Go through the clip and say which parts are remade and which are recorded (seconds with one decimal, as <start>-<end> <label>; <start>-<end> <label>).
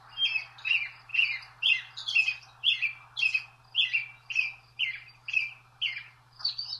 0.0-6.8 recorded